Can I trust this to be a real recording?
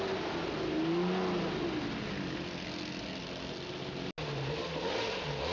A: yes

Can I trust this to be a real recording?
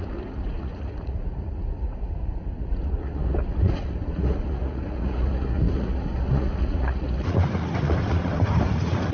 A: no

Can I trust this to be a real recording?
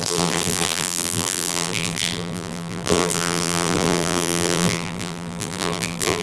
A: no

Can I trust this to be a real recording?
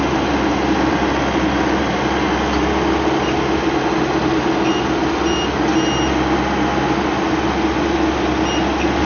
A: yes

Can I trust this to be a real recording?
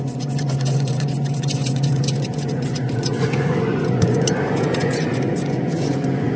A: no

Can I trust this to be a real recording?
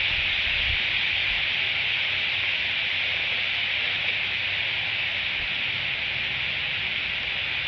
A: yes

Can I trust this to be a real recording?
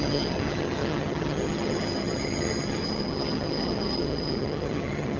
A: no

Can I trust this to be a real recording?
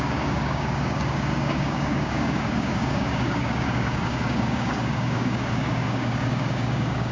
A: no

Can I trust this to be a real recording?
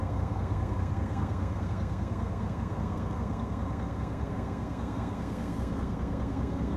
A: no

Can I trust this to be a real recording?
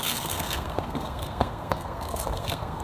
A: no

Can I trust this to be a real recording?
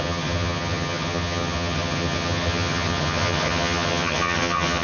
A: no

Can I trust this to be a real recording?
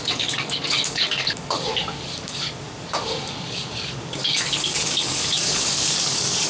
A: no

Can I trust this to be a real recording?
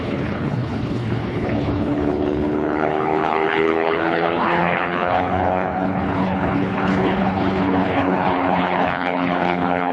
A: no